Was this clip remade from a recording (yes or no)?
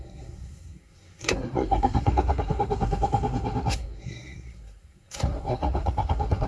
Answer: yes